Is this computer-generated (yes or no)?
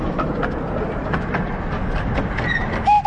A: no